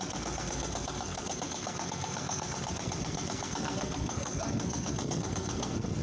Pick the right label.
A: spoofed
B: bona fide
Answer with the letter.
A